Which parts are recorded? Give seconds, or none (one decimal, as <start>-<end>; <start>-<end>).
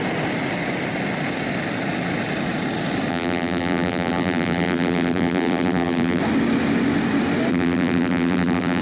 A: 0.0-3.1; 6.2-7.5